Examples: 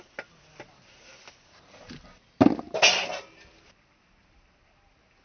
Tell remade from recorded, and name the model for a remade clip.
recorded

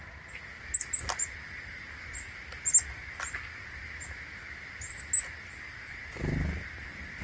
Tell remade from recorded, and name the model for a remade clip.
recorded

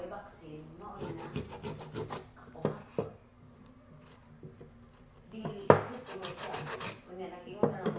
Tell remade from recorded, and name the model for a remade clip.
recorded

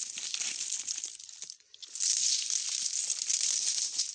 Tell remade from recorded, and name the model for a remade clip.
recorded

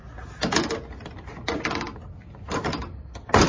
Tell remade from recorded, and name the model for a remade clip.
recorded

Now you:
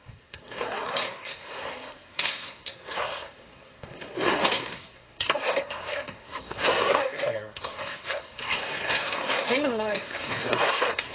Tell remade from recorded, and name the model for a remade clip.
remade, codec, SNAC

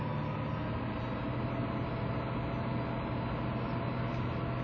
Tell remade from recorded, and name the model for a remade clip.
recorded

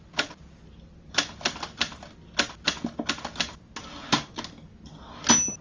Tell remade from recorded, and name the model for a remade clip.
recorded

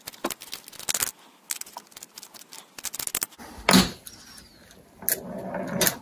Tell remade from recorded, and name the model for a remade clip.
recorded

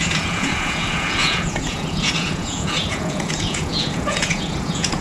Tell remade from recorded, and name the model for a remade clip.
remade, vocoder, Vocos